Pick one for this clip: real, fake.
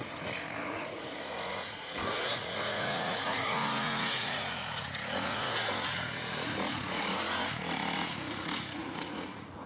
fake